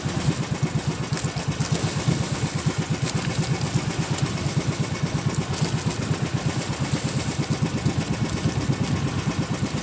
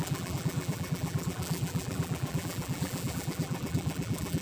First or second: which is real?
first